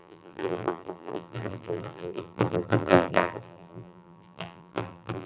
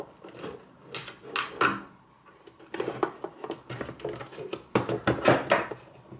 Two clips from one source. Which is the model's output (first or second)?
first